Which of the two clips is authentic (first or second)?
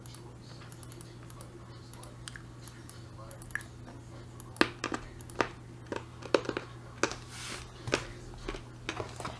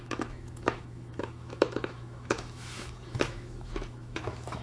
first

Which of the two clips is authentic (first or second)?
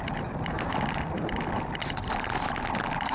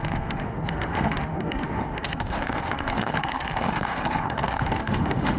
first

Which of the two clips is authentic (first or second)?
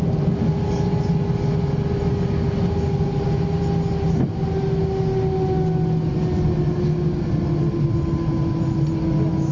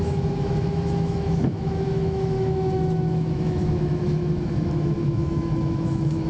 first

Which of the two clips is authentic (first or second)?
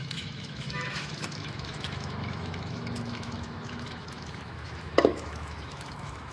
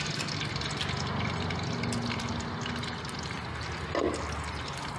second